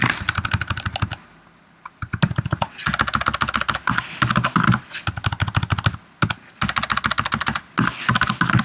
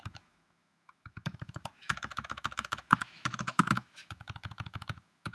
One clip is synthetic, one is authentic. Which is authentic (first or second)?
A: first